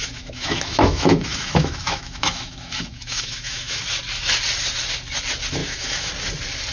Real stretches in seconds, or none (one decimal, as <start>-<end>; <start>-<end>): 3.8-5.6; 6.1-6.7